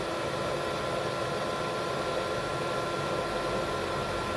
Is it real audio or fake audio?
real